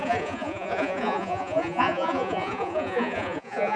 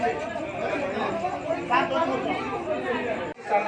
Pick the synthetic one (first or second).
first